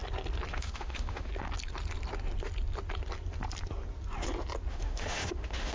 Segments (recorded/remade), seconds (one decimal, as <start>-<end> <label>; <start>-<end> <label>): 0.0-0.5 recorded; 0.5-1.3 remade; 1.3-4.7 recorded; 4.7-5.7 remade